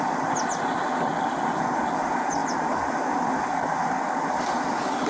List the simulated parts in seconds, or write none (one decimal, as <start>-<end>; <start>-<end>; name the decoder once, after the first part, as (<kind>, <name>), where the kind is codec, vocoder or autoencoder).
none